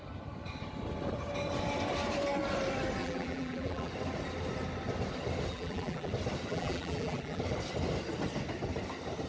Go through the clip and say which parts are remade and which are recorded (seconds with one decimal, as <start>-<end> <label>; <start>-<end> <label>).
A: 0.0-3.0 recorded; 3.0-3.9 remade; 3.9-5.5 recorded; 5.5-6.1 remade; 6.1-6.5 recorded; 6.5-7.4 remade; 7.4-9.3 recorded